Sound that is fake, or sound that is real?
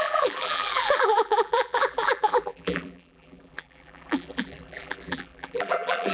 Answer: fake